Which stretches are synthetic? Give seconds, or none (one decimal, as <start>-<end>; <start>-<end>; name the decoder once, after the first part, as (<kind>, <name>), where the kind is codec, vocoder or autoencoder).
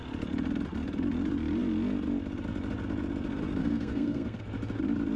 3.6-4.4 (codec, SNAC)